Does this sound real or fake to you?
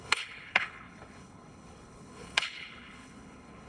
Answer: fake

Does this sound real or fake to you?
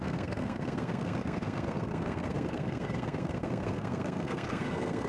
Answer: fake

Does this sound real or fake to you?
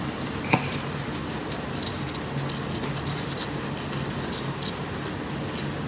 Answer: real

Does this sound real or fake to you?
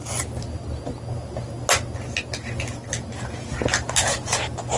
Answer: real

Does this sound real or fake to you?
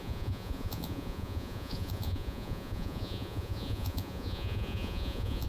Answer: fake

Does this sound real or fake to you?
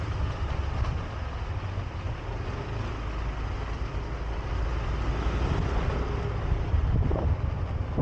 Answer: real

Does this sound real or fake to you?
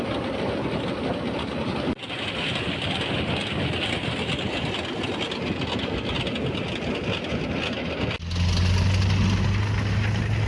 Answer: real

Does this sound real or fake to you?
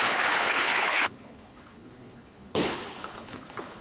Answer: fake